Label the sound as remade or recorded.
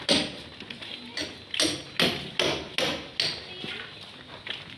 recorded